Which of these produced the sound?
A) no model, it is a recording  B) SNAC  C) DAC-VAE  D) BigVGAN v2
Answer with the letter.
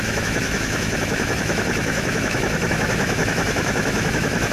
C